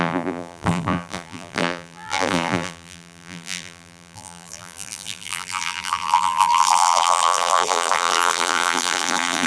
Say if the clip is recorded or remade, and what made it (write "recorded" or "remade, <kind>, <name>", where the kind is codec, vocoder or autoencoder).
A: remade, vocoder, BigVGAN v2